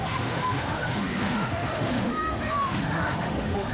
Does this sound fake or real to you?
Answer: fake